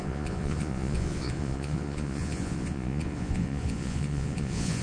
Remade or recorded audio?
remade